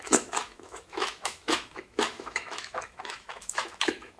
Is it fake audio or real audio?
fake